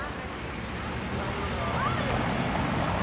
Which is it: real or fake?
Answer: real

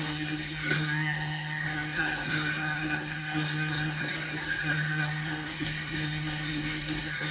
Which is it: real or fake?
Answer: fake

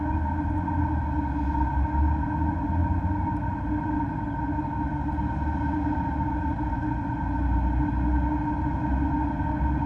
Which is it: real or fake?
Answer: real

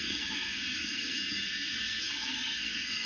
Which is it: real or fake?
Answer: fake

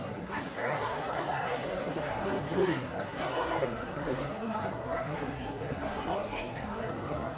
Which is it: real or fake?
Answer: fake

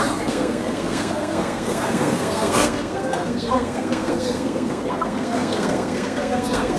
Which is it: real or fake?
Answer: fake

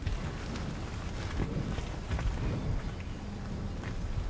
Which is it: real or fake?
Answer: real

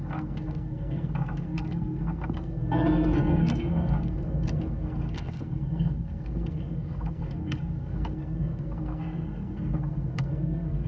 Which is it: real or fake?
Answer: fake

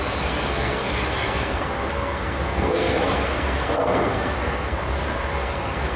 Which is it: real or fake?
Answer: fake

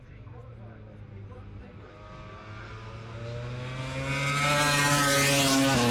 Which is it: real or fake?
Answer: real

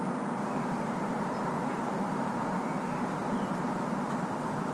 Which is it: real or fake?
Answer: real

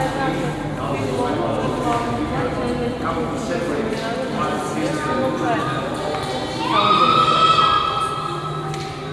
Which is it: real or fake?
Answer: real